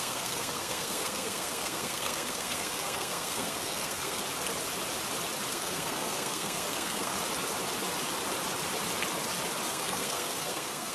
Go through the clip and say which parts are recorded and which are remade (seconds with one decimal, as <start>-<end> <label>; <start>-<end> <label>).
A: 0.0-4.2 remade; 4.2-5.5 recorded; 5.5-7.1 remade; 7.1-9.7 recorded; 9.7-10.9 remade